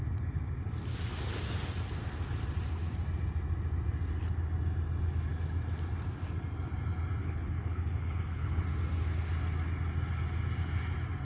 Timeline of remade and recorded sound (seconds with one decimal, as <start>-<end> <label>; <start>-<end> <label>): 0.0-7.2 recorded; 7.2-8.6 remade; 8.6-11.2 recorded